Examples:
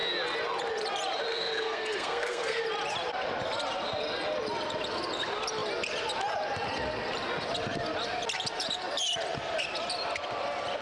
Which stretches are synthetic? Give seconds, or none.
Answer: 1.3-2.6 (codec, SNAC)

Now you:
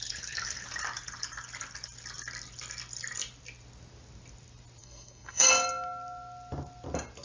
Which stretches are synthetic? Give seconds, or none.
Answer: 4.8-5.5 (codec, SNAC)

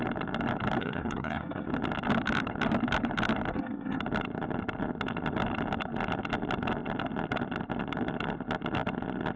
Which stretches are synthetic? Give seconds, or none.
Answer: 0.8-1.7 (codec, SNAC); 3.5-4.0

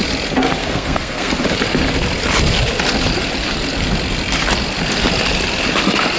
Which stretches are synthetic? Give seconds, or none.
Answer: 0.6-1.3 (codec, SNAC)